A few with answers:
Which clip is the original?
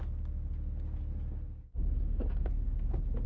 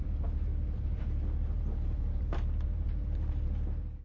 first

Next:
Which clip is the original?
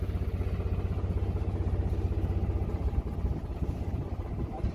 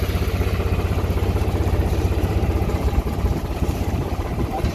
first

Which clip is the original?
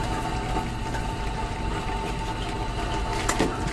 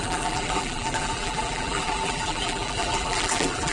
first